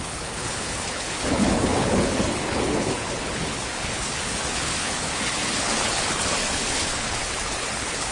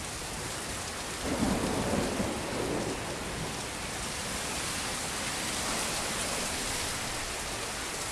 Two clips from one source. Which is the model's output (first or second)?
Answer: first